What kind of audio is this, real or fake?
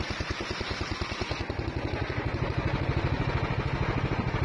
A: real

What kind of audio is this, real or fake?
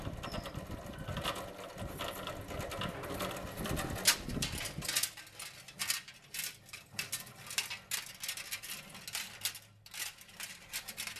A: real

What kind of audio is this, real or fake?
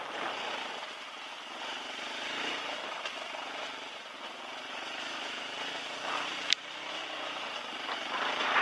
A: fake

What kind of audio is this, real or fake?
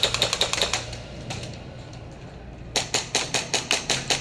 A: real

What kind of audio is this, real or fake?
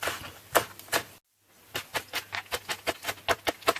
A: real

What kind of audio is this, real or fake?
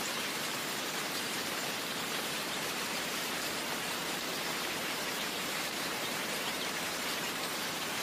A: fake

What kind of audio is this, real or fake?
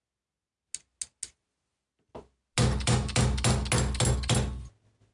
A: real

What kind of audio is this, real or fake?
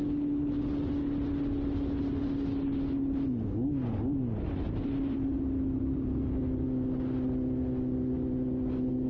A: real